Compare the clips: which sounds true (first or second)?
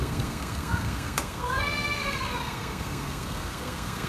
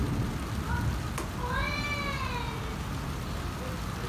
second